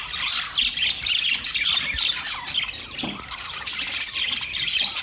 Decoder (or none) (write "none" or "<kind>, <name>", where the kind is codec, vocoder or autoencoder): none